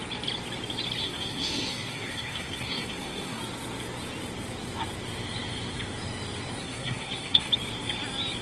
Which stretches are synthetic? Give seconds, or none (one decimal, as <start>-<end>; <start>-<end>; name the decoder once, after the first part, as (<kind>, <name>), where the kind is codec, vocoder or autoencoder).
1.0-3.4 (codec, SNAC); 6.6-7.5

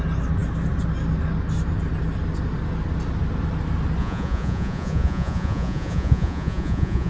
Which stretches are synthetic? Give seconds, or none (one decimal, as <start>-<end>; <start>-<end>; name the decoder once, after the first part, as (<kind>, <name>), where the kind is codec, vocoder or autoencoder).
4.0-7.1 (vocoder, Vocos)

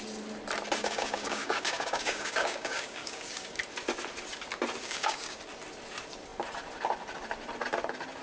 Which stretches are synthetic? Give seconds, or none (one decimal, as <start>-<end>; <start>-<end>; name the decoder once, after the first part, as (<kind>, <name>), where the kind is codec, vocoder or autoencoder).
0.8-3.6 (codec, DAC); 4.8-5.4

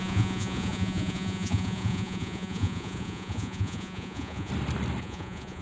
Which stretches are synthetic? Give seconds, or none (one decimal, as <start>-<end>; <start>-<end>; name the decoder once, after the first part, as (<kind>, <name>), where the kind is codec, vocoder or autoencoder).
0.0-4.5 (vocoder, Vocos); 5.0-5.6

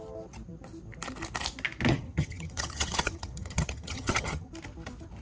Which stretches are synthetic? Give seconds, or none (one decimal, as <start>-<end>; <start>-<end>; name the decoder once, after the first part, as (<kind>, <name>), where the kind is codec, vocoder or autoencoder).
1.9-4.5 (vocoder, HiFi-GAN)